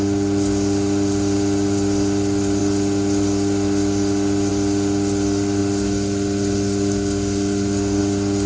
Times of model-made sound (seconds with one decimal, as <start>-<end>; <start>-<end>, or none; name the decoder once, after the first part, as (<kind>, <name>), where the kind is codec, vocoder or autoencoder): 0.0-2.6 (vocoder, BigVGAN v2); 4.5-8.5